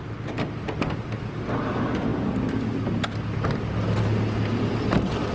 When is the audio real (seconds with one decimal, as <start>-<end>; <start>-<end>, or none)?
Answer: 0.0-5.3

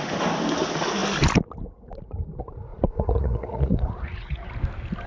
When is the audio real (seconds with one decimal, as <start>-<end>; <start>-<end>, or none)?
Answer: 0.0-2.7; 4.5-5.1

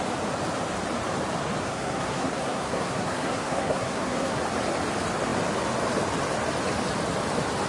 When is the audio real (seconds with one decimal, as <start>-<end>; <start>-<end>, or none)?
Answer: 0.0-1.6; 4.4-7.7

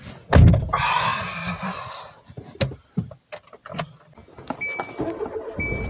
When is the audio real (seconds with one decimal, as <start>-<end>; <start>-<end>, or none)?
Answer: 0.0-5.9